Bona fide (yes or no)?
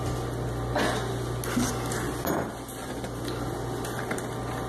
yes